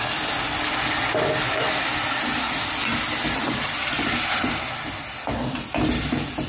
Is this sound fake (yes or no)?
no